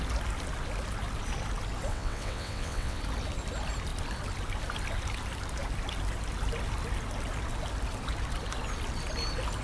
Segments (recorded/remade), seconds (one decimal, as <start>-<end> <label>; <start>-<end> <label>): 0.0-1.9 recorded; 1.9-3.0 remade; 3.0-9.6 recorded